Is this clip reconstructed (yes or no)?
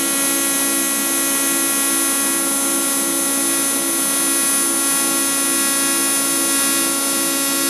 no